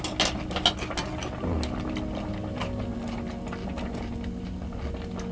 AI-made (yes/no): no